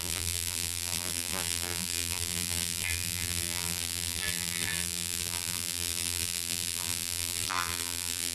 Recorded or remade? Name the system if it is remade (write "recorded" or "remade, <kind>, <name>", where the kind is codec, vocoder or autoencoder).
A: remade, vocoder, BigVGAN v2